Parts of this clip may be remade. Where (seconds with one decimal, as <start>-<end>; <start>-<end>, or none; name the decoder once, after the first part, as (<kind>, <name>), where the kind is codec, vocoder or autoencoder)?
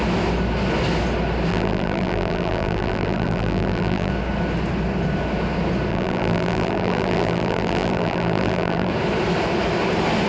1.5-4.1 (vocoder, BigVGAN v2); 5.9-8.9